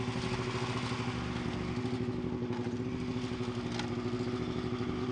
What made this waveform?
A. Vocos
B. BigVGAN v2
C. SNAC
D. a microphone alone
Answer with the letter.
D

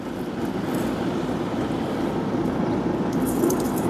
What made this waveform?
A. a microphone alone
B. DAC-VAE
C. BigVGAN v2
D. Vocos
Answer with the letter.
A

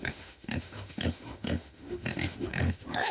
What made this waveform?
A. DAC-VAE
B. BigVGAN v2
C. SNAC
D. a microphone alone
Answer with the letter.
A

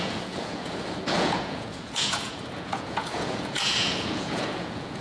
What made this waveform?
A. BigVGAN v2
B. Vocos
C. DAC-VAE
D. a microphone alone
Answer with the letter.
B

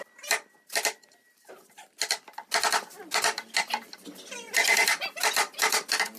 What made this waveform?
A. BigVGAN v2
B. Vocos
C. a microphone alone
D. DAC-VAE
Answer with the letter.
C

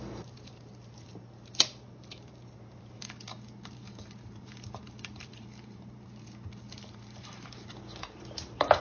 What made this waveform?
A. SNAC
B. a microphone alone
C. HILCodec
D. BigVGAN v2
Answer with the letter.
D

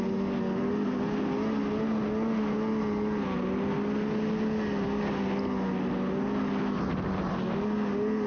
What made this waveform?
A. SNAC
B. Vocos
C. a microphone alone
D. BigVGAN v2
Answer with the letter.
C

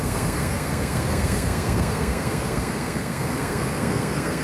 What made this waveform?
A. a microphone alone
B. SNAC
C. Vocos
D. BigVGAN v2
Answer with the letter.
B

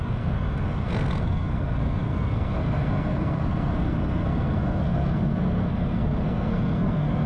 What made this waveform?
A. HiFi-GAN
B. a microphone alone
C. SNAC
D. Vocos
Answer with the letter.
C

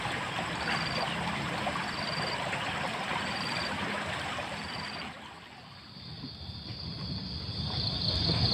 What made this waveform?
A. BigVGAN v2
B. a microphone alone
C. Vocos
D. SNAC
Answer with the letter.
A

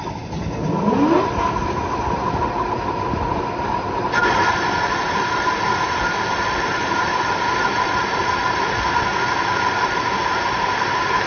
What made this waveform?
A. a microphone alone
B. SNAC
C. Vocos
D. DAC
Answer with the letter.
A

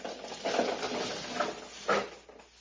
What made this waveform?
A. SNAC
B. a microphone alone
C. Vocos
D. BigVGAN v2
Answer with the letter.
B